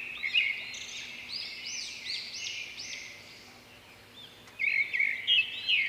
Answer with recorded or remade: recorded